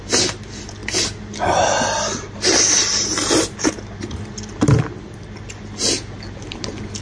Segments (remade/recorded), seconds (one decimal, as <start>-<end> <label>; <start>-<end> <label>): 0.0-7.0 recorded